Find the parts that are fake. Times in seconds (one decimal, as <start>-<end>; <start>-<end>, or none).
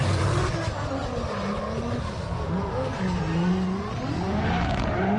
0.0-1.0; 4.1-5.2